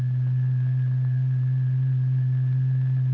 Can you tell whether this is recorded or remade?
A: recorded